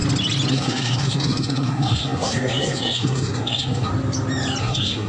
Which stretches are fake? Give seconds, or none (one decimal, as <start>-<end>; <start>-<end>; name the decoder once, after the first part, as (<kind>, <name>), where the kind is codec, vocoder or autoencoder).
0.5-3.9 (codec, SNAC); 4.6-5.1